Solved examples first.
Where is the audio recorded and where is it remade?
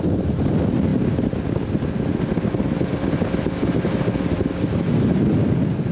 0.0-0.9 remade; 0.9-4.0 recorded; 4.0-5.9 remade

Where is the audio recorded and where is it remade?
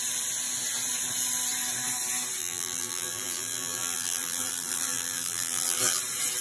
0.0-2.4 recorded; 2.4-6.0 remade; 6.0-6.4 recorded